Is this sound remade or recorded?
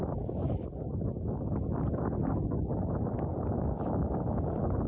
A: recorded